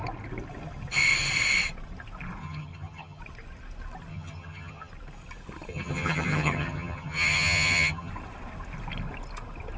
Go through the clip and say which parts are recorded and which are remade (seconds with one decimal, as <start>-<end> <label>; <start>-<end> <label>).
0.0-2.4 recorded; 2.4-3.2 remade; 3.2-4.1 recorded; 4.1-4.9 remade; 4.9-5.7 recorded; 5.7-8.1 remade; 8.1-9.8 recorded